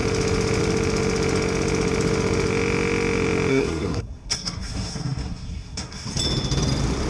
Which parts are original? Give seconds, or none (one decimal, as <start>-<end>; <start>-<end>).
0.0-3.5; 6.1-7.1